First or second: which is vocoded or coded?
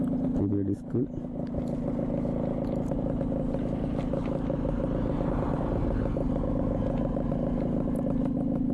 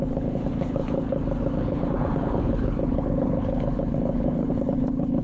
second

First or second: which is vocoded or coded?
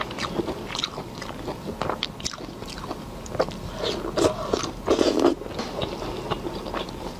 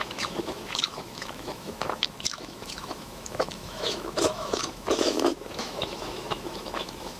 second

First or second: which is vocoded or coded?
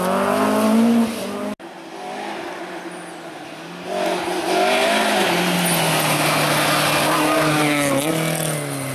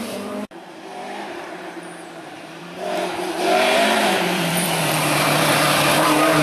second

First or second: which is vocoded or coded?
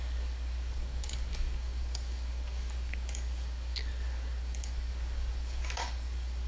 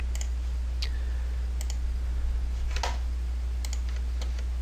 first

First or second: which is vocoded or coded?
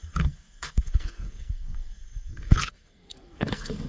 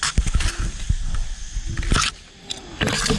first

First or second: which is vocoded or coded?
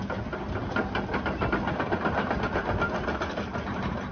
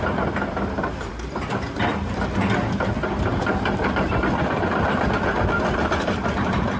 second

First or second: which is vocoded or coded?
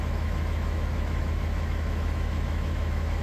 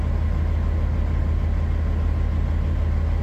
first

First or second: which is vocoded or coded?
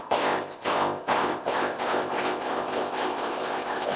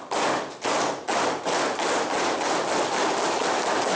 first